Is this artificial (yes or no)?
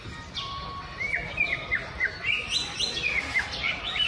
yes